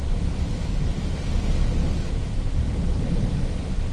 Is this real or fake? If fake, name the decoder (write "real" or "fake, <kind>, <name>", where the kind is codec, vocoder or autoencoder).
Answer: real